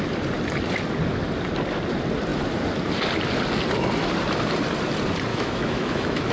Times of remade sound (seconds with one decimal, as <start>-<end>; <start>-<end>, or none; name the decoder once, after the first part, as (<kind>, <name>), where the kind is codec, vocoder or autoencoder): 5.3-6.3 (autoencoder, DAC-VAE)